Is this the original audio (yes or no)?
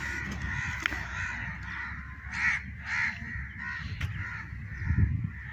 yes